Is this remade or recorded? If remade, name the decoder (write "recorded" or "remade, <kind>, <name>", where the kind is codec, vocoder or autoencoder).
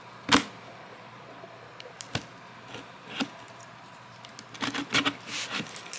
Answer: recorded